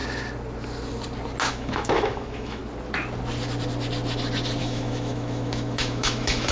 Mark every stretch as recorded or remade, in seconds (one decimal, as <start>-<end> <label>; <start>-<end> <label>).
0.0-1.5 recorded; 1.5-2.6 remade; 2.6-4.6 recorded; 4.6-6.5 remade